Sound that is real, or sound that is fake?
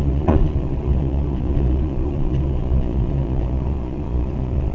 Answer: fake